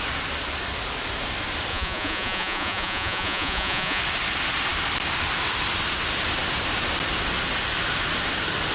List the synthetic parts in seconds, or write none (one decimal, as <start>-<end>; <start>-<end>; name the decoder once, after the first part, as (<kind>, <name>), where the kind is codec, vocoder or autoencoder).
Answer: 1.7-4.0 (vocoder, Vocos)